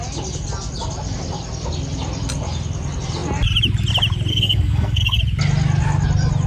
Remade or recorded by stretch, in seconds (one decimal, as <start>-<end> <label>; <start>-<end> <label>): 0.0-4.3 recorded; 4.3-5.2 remade; 5.2-6.5 recorded